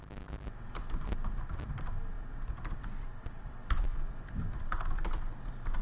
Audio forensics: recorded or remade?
remade